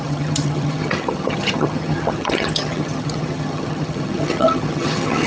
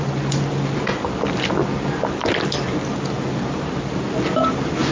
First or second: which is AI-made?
first